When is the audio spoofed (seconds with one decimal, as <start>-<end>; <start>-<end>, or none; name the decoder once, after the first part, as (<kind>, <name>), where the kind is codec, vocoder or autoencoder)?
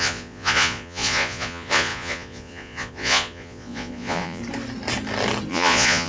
0.0-4.4 (vocoder, Vocos); 5.5-6.1